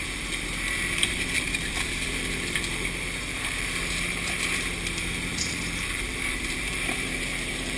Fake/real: fake